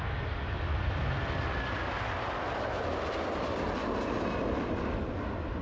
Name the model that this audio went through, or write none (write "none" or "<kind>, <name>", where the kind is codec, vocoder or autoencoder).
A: none